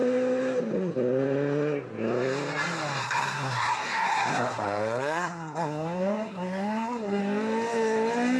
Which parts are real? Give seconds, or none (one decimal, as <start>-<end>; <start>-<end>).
0.0-3.0; 7.2-8.4